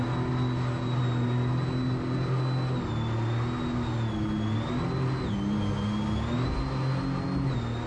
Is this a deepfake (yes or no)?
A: no